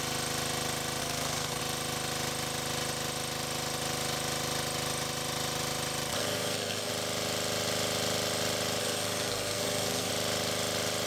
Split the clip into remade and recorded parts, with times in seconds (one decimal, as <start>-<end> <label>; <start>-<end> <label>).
0.0-1.0 recorded; 1.0-1.6 remade; 1.6-6.1 recorded; 6.1-6.9 remade; 6.9-8.8 recorded; 8.8-10.1 remade; 10.1-11.1 recorded